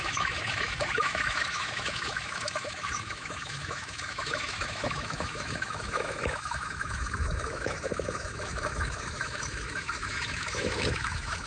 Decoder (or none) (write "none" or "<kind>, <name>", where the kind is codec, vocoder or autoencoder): autoencoder, DAC-VAE